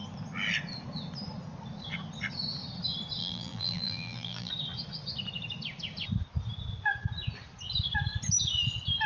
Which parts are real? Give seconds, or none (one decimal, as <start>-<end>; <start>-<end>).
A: 0.0-3.2; 4.5-9.1